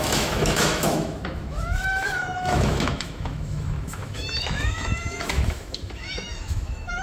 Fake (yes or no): yes